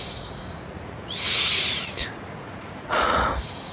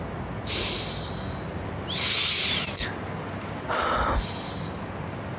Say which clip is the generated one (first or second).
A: first